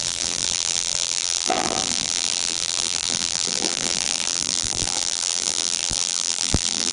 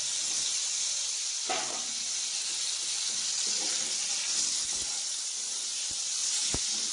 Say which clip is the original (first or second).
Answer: second